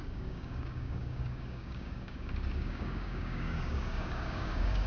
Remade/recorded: remade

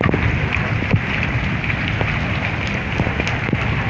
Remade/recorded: recorded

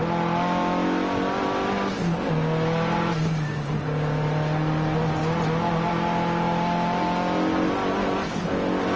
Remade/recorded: recorded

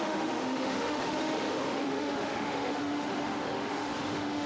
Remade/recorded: remade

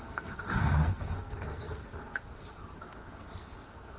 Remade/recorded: remade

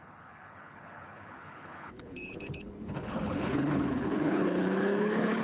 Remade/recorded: remade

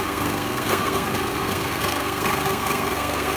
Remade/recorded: remade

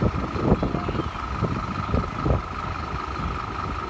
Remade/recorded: recorded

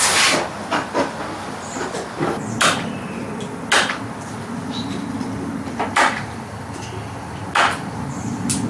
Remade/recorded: recorded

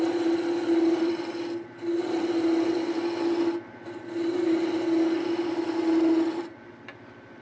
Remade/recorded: recorded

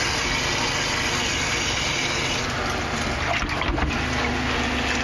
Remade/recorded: recorded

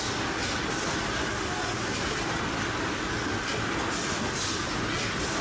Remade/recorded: recorded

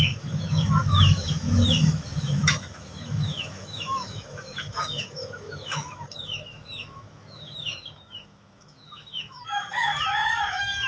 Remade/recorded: remade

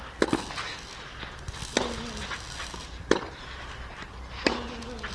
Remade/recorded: recorded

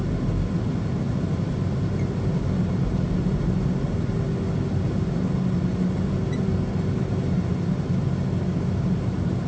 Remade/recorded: recorded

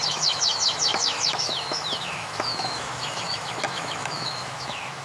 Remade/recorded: remade